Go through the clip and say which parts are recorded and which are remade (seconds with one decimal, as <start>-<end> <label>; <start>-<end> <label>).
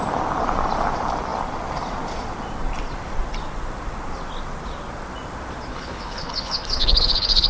0.0-5.7 recorded; 5.7-7.5 remade